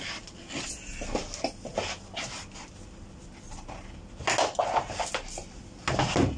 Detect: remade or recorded recorded